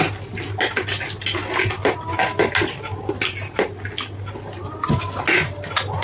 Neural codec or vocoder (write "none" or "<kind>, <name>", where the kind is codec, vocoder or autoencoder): none